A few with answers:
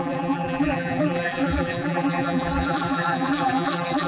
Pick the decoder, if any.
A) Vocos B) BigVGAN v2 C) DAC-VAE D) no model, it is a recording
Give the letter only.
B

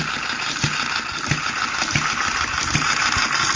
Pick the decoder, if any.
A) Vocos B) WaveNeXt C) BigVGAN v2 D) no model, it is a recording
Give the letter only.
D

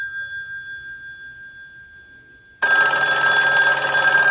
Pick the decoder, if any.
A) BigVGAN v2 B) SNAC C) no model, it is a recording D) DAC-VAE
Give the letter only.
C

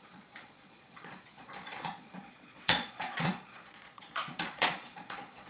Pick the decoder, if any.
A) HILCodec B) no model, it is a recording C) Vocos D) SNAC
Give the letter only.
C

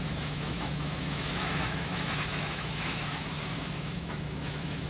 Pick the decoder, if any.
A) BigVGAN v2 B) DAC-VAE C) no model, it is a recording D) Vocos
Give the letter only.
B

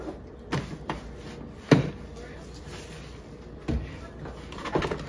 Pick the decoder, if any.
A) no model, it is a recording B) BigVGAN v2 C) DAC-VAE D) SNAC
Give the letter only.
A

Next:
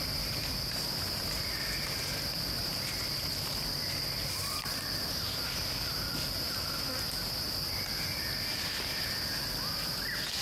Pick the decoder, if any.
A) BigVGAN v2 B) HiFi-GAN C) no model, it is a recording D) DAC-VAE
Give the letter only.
C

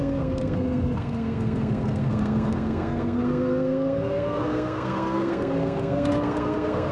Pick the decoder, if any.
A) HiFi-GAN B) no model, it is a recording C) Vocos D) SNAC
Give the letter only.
D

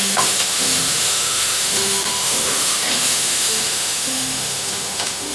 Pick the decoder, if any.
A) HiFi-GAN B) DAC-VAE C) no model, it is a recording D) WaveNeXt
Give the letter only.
B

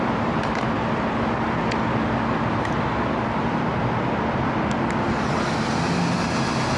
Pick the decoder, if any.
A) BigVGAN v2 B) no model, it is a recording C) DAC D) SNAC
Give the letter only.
B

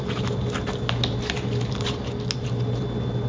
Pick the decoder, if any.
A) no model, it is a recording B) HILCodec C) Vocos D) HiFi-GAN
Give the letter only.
A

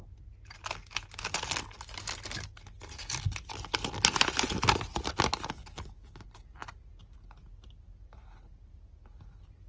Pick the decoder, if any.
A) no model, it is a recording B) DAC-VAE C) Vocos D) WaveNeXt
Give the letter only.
A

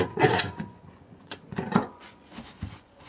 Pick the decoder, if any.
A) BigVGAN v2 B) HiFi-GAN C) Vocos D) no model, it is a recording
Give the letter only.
C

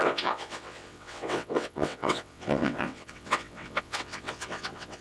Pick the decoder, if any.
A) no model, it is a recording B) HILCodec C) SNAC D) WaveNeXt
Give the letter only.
D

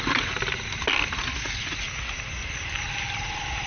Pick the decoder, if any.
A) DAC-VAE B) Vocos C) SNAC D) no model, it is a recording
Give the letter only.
D